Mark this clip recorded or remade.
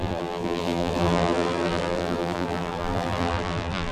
remade